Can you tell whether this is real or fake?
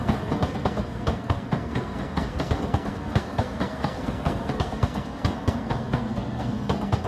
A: fake